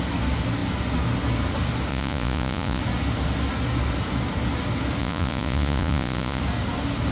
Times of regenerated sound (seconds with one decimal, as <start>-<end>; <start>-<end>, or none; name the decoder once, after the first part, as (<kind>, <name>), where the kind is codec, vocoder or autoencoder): 1.9-2.8 (vocoder, Vocos); 5.0-6.4